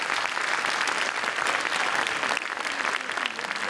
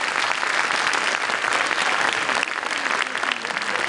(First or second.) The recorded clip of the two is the second